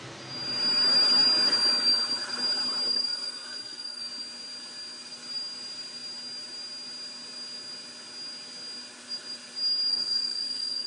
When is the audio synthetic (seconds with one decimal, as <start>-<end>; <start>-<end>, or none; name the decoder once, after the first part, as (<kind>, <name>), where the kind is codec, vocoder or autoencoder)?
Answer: 2.9-4.0 (codec, SNAC); 9.9-10.9